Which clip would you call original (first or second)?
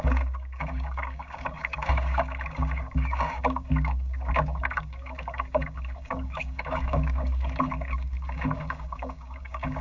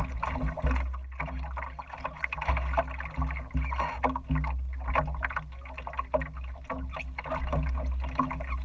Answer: second